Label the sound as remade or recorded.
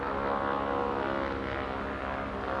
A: recorded